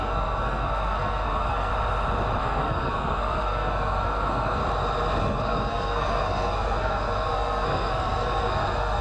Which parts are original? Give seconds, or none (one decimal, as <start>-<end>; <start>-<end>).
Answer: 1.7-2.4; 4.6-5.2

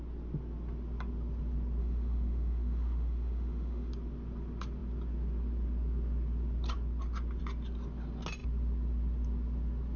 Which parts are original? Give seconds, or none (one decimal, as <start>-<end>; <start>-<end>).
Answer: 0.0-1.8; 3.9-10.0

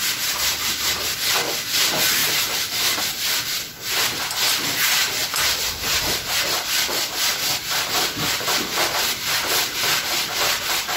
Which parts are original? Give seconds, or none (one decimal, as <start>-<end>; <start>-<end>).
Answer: 0.0-2.2; 3.0-5.2; 7.0-11.0

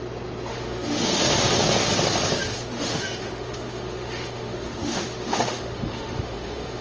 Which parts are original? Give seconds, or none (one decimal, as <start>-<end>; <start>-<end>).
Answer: 0.0-0.5; 1.2-2.5

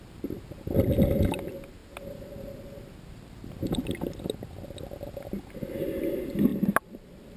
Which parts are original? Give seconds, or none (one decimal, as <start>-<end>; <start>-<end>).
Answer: 0.0-7.4

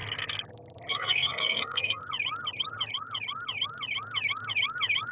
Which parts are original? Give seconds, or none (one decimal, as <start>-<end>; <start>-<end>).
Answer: 0.0-0.9; 2.0-5.1